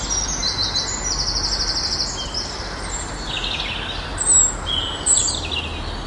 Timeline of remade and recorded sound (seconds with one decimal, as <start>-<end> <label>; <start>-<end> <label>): 0.0-6.1 recorded